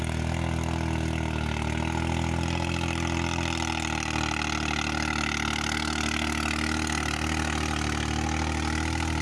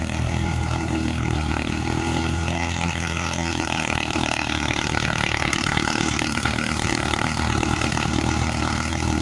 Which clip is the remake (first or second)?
second